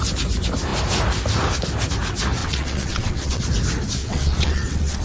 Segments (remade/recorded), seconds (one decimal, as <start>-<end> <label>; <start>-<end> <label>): 0.0-2.4 recorded; 2.4-3.4 remade; 3.4-4.0 recorded; 4.0-5.0 remade